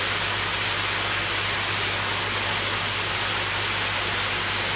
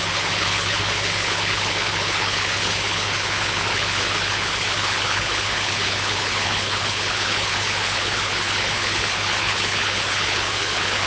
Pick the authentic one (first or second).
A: first